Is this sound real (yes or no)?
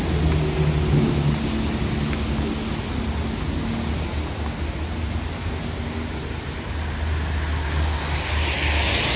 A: yes